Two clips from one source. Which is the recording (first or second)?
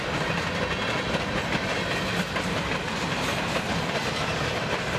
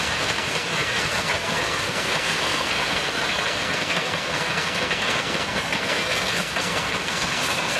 first